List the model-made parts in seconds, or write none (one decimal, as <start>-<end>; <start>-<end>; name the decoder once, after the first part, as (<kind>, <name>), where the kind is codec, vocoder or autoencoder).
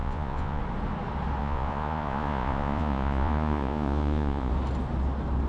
0.0-0.6 (vocoder, Vocos); 1.4-4.5